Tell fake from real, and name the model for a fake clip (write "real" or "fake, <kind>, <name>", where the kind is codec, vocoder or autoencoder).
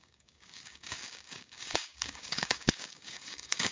fake, codec, DAC